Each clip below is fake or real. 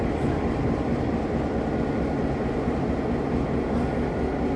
real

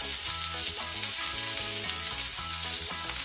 real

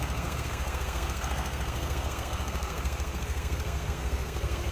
fake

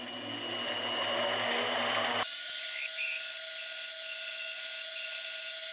real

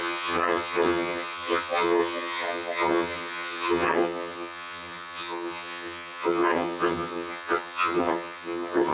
fake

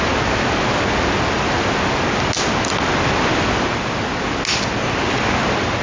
real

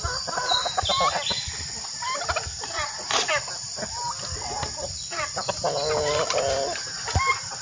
real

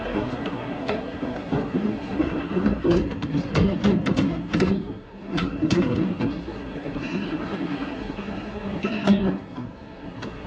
fake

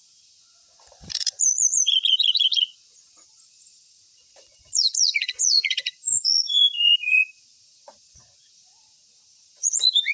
fake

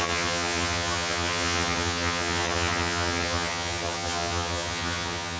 fake